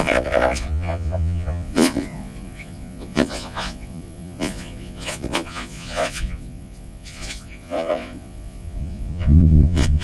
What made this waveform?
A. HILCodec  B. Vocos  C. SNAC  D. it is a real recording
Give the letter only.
B